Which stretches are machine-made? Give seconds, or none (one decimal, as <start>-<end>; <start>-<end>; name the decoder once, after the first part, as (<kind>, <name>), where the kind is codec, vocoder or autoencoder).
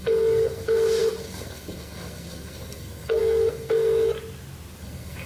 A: 0.0-4.1 (codec, SNAC); 4.8-5.3